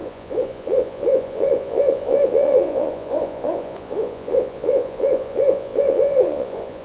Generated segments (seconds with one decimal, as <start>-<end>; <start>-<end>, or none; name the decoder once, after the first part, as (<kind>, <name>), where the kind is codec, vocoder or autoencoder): 0.0-6.8 (vocoder, Vocos)